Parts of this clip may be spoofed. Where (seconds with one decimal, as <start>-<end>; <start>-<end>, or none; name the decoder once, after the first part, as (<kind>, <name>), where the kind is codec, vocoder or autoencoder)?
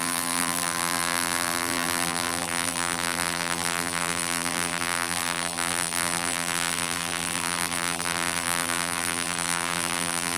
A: 0.0-10.4 (vocoder, BigVGAN v2)